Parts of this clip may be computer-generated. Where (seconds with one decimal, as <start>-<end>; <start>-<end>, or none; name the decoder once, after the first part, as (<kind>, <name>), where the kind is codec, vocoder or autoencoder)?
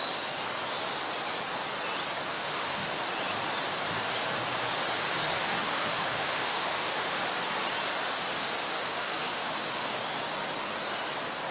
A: 2.3-3.1 (autoencoder, DAC-VAE); 5.3-7.3; 8.6-10.0